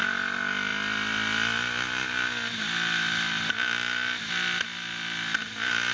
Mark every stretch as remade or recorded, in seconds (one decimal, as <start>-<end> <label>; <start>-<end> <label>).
0.0-5.9 recorded